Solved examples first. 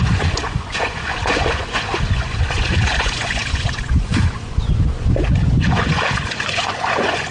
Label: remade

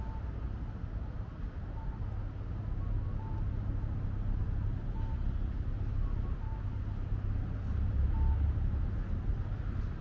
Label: recorded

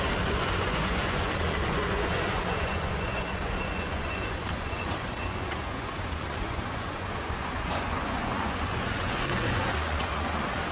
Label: remade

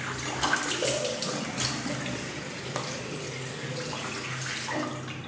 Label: recorded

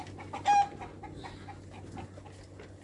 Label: recorded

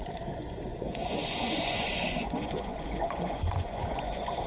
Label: remade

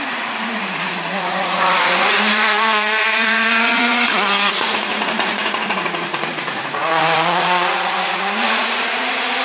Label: remade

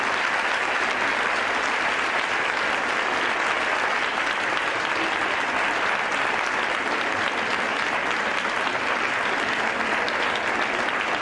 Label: recorded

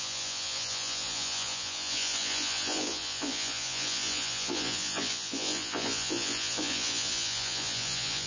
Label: remade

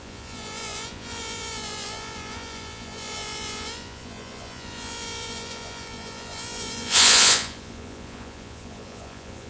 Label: remade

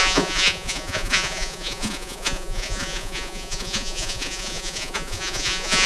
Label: remade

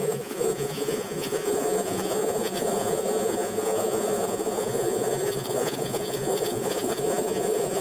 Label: remade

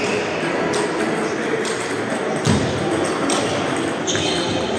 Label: recorded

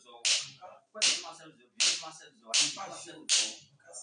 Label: recorded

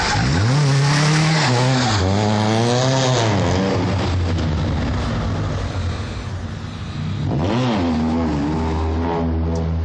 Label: recorded